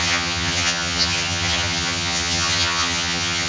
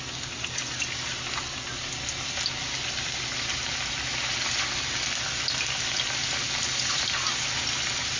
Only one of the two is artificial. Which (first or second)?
first